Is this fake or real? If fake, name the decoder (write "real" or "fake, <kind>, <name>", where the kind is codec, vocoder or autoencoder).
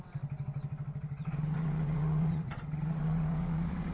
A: fake, vocoder, WaveNeXt